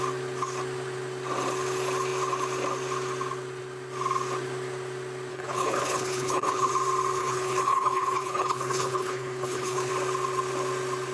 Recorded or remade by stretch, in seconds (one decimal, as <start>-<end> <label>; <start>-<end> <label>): 0.0-5.3 recorded; 5.3-6.7 remade; 6.7-7.2 recorded; 7.2-9.9 remade; 9.9-11.1 recorded